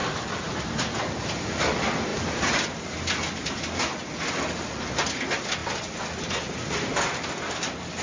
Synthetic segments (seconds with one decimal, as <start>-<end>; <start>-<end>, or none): 0.0-1.5; 2.1-4.3; 5.6-6.4